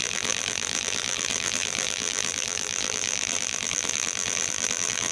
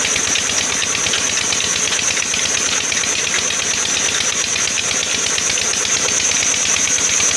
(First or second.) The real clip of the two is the second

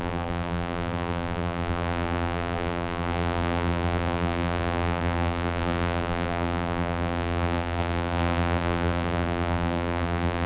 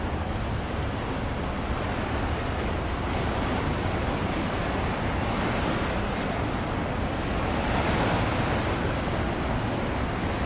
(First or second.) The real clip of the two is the second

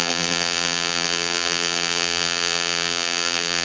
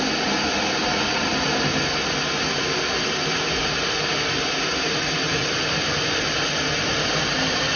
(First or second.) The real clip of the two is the second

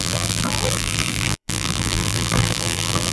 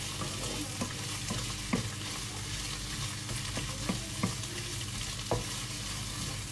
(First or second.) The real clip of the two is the second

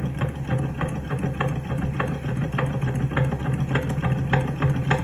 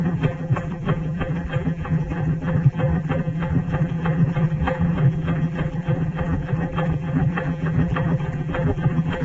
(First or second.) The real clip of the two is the first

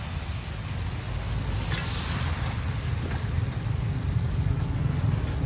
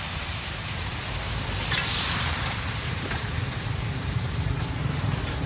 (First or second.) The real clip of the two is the first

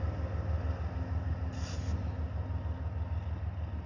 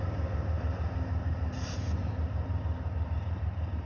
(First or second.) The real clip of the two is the first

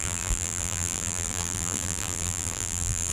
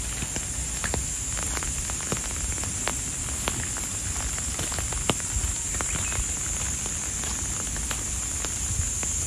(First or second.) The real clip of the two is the second